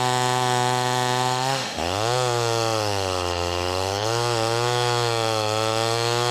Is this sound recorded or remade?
remade